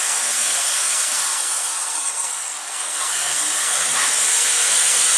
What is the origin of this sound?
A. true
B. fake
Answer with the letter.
B